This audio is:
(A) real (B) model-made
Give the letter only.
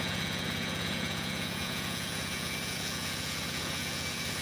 B